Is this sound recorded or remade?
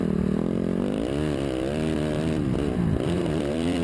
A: remade